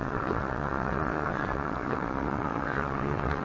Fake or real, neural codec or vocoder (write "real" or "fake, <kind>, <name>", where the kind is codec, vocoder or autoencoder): fake, vocoder, WaveNeXt